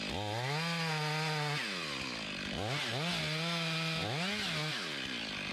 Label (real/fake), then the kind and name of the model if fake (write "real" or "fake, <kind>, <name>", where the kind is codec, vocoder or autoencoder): real